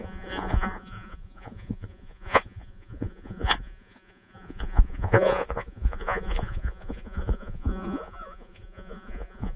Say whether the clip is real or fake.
fake